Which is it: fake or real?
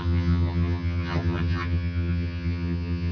fake